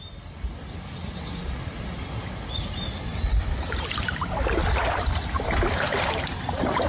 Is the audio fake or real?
real